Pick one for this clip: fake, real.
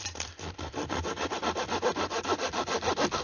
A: fake